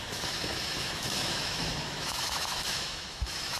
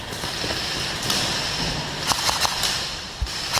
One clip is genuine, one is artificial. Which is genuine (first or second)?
second